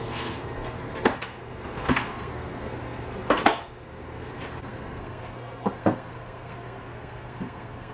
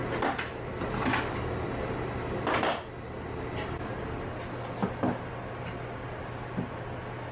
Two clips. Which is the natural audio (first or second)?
second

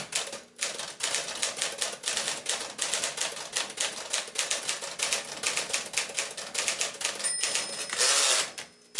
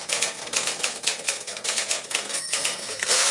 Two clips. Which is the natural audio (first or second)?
first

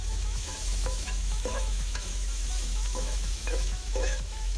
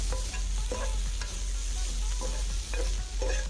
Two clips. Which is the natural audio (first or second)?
second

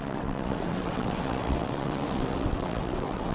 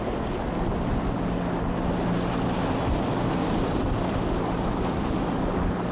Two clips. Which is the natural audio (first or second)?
second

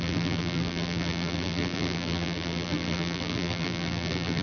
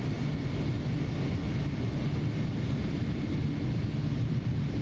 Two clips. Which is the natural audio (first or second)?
second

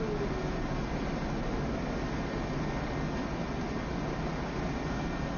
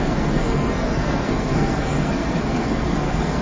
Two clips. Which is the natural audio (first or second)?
first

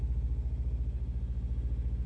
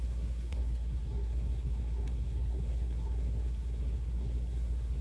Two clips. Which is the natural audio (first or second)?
first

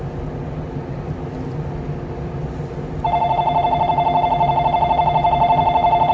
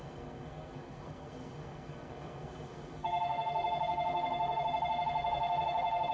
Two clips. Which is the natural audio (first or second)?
first